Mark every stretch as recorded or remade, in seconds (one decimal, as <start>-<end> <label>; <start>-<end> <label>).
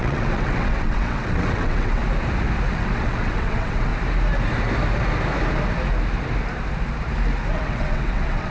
0.0-2.0 remade; 2.0-2.7 recorded; 2.7-3.9 remade; 3.9-7.5 recorded; 7.5-8.5 remade